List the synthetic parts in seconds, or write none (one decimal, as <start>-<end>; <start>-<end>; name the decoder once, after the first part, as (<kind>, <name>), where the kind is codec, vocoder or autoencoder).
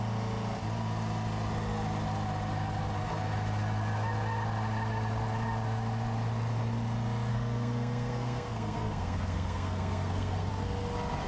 7.3-10.5 (codec, SNAC)